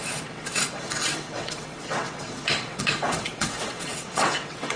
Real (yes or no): no